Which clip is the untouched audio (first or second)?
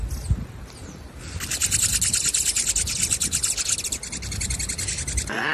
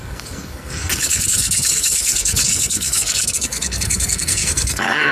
first